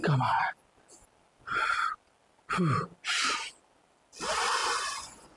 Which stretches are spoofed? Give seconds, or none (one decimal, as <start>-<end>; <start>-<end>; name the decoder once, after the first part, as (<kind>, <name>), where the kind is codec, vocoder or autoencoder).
4.6-5.4 (vocoder, Vocos)